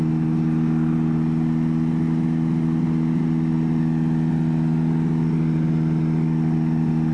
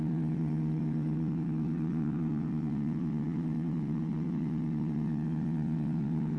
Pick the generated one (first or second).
second